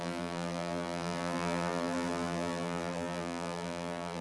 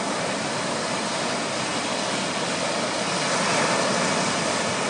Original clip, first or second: second